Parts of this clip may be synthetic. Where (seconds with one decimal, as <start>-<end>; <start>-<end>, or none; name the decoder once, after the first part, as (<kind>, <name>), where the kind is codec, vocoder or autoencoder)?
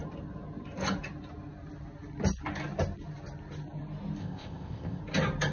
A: 4.2-5.0 (codec, ZipCodec)